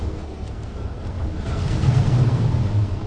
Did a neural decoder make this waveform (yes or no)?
yes